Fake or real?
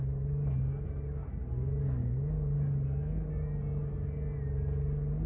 real